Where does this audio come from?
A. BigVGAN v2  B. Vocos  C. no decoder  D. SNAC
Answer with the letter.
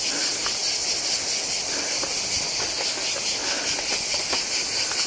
C